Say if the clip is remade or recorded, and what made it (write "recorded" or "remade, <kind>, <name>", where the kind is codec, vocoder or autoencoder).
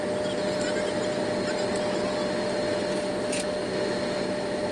recorded